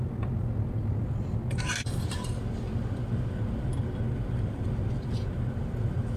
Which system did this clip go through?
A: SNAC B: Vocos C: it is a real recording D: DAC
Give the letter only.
C